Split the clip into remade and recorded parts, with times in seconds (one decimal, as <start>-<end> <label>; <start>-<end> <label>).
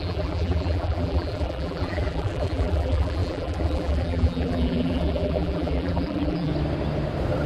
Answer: 0.0-6.5 remade; 6.5-7.5 recorded